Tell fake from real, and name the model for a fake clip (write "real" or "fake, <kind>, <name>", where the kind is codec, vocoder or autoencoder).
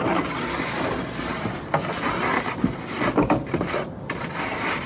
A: real